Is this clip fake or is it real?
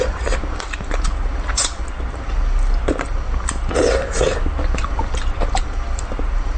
real